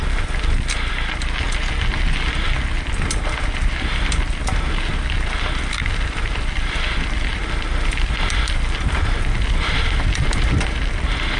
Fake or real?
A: real